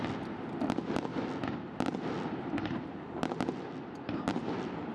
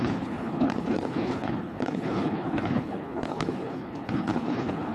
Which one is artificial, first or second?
second